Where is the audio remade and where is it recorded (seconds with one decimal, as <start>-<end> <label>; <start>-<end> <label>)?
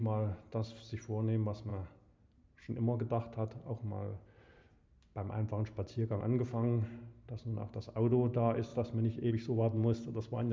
0.0-10.5 recorded